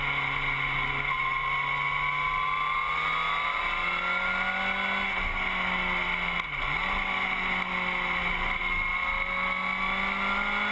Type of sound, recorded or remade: recorded